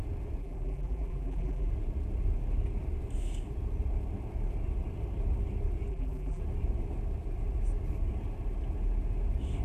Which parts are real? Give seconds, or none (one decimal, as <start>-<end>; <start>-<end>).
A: 0.0-0.4; 1.7-5.9; 6.4-9.6